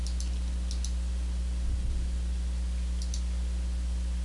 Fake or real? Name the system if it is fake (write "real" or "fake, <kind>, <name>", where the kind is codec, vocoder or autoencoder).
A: real